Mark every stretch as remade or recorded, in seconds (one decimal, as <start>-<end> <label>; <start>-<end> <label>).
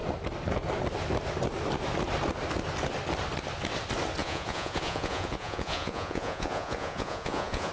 0.0-4.2 recorded; 4.2-7.7 remade